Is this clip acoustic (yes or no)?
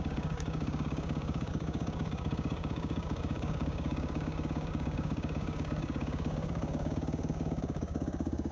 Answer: no